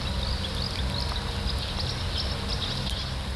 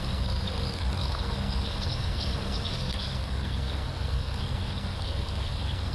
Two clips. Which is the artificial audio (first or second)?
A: second